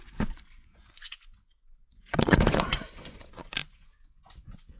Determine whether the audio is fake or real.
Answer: fake